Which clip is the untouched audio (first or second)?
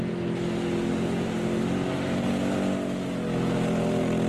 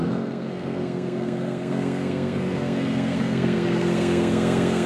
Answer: first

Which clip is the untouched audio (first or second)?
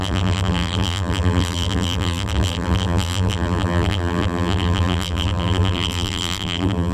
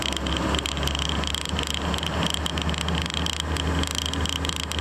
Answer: second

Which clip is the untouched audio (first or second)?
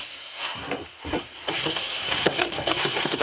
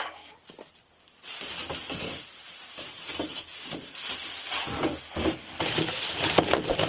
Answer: second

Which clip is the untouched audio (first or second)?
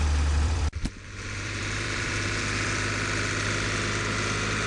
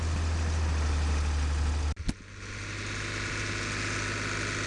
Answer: second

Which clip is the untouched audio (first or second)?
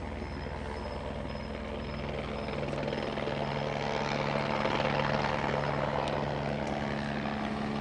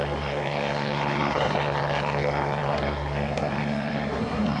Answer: first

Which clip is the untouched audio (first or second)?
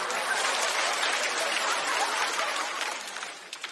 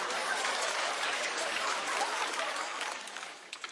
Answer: first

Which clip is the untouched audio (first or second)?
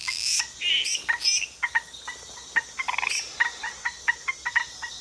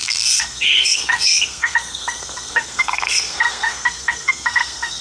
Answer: first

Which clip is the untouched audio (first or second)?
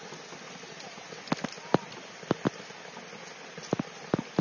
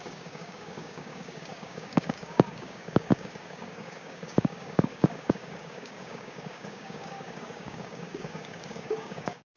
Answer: first